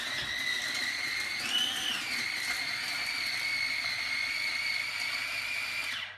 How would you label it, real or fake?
real